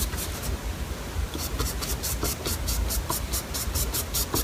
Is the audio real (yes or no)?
yes